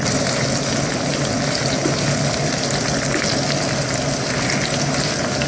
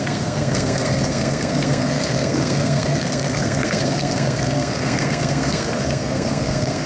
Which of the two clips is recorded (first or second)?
first